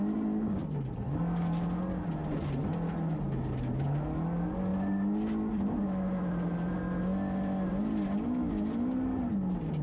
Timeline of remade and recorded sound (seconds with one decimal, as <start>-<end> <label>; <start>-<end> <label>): 0.0-9.8 recorded